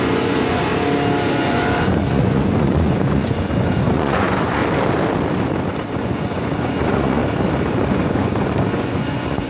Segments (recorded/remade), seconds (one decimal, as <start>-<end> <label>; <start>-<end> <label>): 0.0-0.7 remade; 0.7-1.3 recorded; 1.3-4.6 remade; 4.6-6.0 recorded; 6.0-7.2 remade; 7.2-7.7 recorded; 7.7-9.5 remade